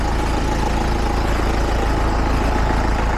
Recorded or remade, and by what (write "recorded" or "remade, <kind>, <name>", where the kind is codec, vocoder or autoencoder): recorded